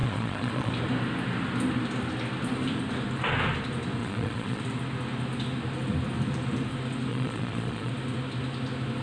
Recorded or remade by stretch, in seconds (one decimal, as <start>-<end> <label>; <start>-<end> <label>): 0.0-0.7 remade; 0.7-4.0 recorded; 4.0-4.6 remade; 4.6-7.1 recorded; 7.1-7.9 remade; 7.9-9.0 recorded